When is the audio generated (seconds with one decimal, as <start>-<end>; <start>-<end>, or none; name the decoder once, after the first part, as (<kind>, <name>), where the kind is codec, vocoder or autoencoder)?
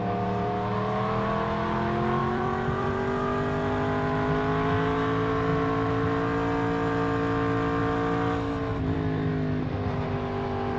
2.2-2.9 (vocoder, BigVGAN v2); 8.7-9.3